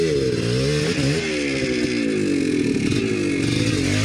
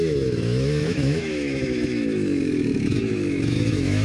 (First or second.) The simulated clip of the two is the second